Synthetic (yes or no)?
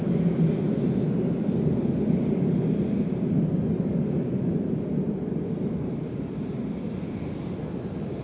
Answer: no